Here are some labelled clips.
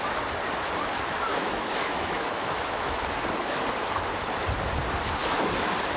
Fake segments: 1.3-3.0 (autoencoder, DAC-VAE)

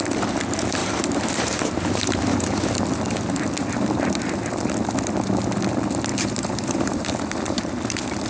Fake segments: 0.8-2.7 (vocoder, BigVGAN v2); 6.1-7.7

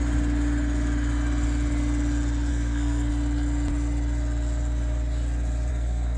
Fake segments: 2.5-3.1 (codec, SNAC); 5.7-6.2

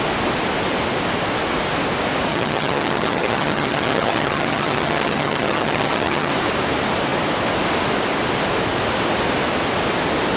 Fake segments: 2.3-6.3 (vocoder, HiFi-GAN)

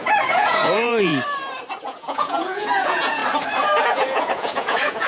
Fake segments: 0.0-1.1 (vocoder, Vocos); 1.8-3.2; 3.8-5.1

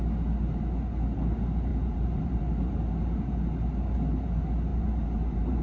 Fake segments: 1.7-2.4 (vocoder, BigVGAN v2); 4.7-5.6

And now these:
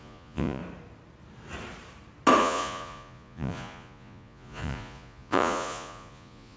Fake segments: 0.0-0.6 (vocoder, Vocos); 2.4-6.6

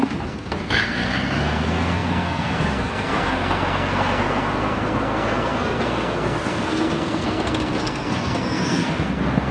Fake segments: 0.0-9.5 (codec, SNAC)